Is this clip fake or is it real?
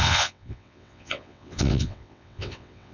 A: fake